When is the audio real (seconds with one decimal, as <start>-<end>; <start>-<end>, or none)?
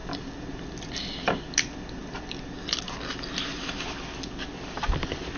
1.4-5.4